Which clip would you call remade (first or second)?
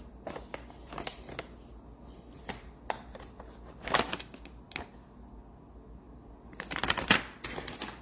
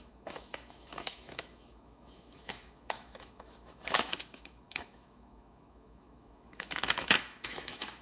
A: second